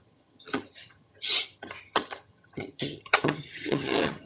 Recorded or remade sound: remade